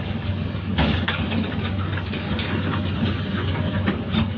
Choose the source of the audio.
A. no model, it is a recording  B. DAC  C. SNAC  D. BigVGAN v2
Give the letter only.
B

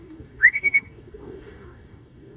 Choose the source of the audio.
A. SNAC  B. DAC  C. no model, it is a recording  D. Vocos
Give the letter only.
B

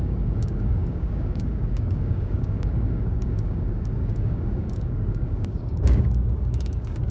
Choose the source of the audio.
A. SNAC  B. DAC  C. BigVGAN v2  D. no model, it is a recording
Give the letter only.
B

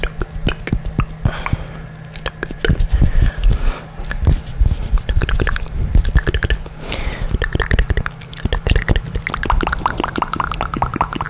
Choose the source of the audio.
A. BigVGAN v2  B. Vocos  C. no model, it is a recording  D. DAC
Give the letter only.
C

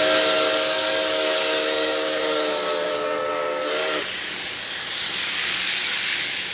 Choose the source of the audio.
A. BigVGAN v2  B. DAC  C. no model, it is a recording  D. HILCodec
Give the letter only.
B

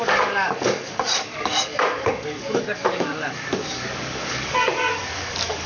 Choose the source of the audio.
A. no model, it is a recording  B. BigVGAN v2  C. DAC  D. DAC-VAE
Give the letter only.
C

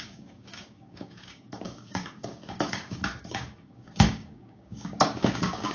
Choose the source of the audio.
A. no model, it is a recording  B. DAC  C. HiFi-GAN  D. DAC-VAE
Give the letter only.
B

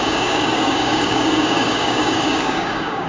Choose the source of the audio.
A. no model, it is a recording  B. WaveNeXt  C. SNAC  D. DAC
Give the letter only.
D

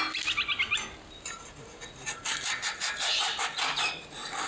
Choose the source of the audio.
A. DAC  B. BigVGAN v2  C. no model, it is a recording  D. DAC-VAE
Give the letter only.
C